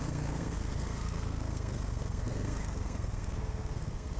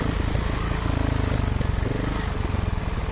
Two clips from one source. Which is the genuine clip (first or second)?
second